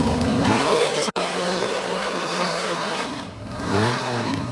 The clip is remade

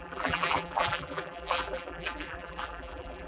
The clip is remade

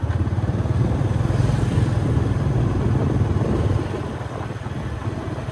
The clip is recorded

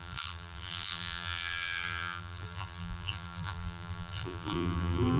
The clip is remade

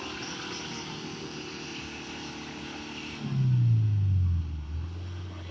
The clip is recorded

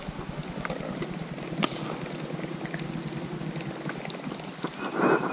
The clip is recorded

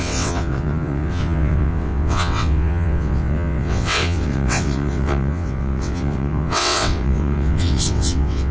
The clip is remade